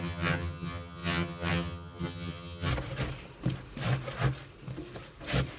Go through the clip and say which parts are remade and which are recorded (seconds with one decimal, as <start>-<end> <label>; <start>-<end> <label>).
0.0-2.7 remade; 2.7-5.6 recorded

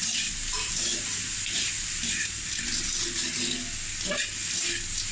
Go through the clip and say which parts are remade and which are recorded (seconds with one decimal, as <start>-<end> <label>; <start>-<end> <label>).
0.0-2.7 remade; 2.7-5.1 recorded

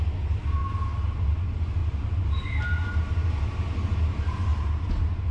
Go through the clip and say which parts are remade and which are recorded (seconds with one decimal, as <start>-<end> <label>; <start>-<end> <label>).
0.0-5.3 recorded

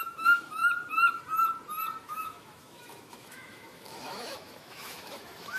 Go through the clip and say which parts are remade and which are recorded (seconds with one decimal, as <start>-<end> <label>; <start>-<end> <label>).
0.0-0.6 remade; 0.6-2.0 recorded; 2.0-5.6 remade

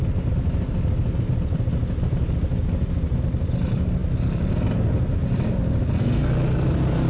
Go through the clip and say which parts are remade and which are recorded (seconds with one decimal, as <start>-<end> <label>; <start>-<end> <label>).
0.0-7.1 recorded

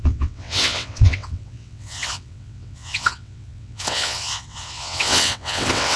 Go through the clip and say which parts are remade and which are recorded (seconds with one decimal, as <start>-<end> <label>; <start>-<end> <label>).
0.0-6.0 remade

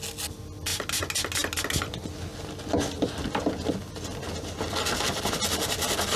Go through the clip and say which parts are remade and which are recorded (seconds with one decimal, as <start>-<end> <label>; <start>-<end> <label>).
0.0-6.2 recorded